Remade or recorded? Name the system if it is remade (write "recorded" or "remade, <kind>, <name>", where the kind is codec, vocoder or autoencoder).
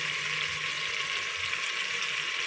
recorded